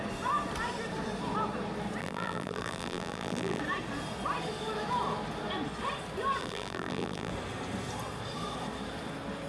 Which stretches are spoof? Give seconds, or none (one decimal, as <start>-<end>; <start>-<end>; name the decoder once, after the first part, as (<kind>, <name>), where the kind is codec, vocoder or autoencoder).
2.0-3.6 (vocoder, BigVGAN v2); 6.4-7.3